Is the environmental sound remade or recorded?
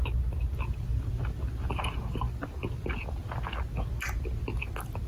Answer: recorded